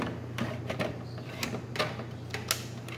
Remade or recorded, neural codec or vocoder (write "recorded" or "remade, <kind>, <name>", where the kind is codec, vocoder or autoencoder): recorded